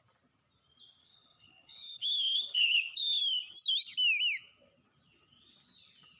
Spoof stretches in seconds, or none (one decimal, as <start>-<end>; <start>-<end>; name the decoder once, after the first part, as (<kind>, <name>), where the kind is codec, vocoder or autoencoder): 1.0-3.2 (codec, HILCodec)